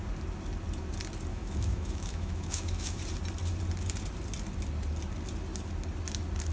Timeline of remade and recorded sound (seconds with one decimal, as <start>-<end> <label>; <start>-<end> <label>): 0.0-1.3 recorded; 1.3-3.0 remade; 3.0-6.5 recorded